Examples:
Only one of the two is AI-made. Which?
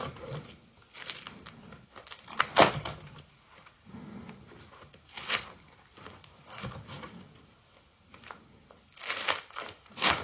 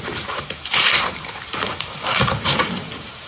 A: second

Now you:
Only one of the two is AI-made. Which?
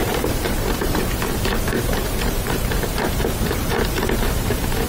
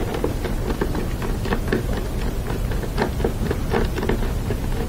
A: first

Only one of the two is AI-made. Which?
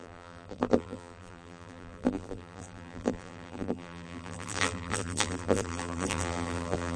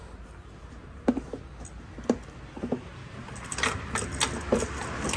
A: first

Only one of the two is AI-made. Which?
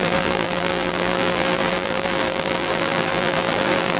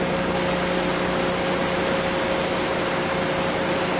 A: first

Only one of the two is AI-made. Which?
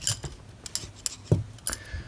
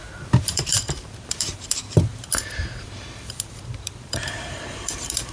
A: second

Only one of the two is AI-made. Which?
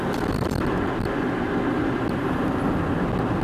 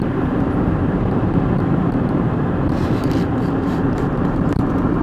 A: second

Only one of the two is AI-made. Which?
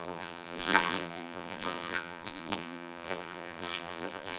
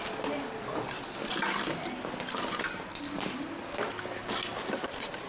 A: first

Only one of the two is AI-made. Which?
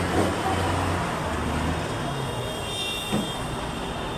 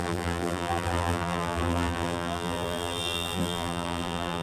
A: second